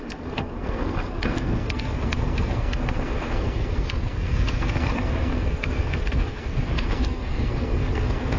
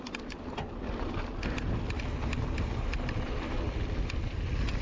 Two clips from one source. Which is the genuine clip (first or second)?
second